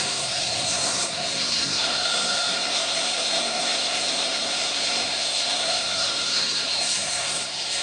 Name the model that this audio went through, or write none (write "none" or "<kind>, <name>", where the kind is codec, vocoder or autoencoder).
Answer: codec, SNAC